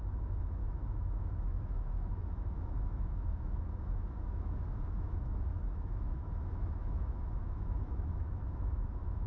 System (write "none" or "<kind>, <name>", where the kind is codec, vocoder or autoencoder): autoencoder, DAC-VAE